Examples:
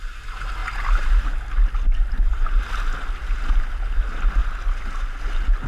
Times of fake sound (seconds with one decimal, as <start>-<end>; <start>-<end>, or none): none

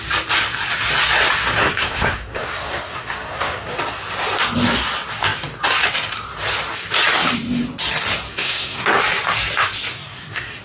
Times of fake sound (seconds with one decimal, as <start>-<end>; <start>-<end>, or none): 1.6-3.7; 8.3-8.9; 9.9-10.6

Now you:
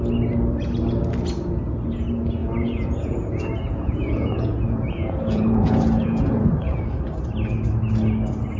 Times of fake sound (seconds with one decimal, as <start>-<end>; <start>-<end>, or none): 2.4-6.8